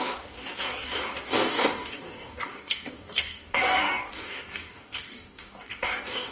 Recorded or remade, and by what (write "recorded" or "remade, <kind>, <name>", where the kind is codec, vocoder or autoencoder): remade, codec, DAC